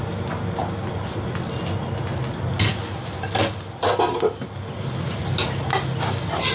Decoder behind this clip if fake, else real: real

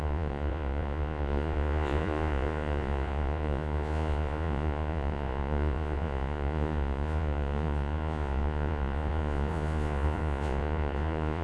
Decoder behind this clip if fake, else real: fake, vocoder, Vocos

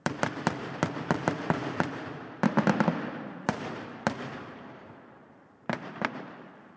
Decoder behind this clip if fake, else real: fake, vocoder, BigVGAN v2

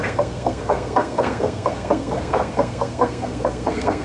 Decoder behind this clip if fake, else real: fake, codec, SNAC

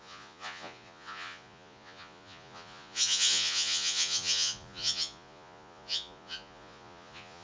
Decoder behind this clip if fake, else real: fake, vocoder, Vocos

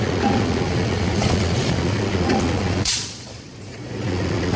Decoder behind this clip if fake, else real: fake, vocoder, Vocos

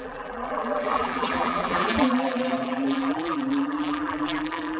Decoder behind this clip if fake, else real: fake, vocoder, BigVGAN v2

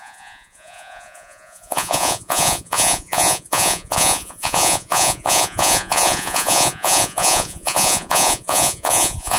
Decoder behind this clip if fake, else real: fake, vocoder, Vocos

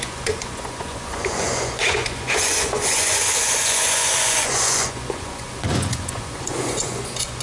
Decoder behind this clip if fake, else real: fake, vocoder, Vocos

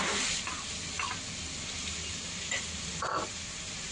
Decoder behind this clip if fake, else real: real